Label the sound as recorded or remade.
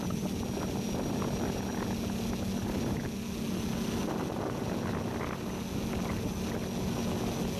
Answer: recorded